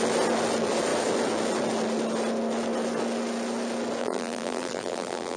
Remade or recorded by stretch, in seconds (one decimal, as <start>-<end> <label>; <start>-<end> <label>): 0.0-4.0 recorded; 4.0-5.4 remade